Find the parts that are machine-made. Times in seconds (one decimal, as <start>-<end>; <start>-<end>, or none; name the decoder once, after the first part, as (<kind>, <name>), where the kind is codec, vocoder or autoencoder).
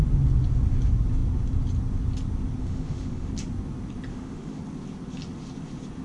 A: 2.6-3.3 (autoencoder, DAC-VAE); 4.1-4.6